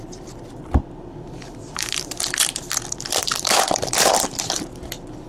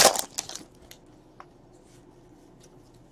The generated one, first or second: first